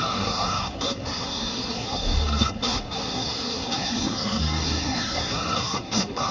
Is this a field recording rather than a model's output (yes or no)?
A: no